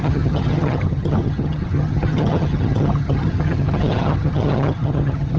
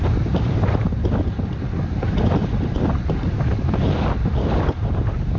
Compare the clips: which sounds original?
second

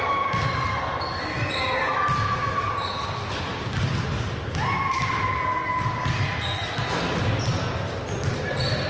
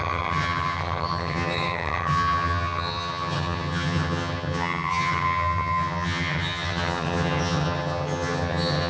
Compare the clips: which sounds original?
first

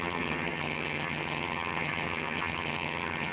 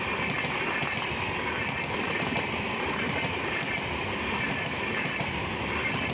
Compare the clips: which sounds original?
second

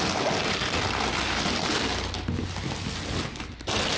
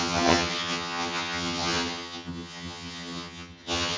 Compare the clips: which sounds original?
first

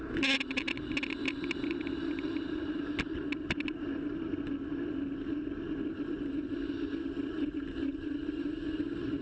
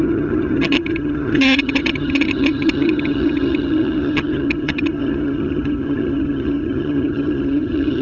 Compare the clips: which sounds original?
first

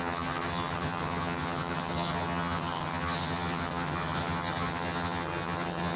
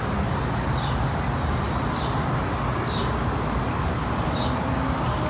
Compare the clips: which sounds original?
second